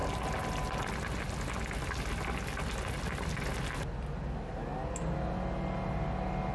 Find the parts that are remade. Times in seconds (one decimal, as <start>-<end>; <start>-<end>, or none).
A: none